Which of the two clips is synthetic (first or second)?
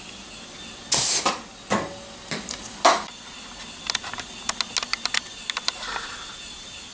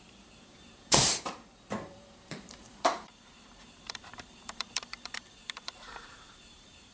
second